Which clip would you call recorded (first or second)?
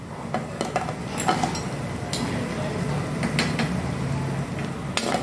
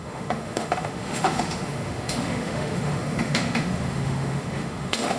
first